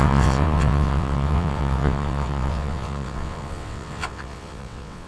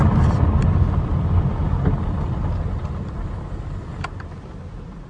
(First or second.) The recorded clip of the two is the second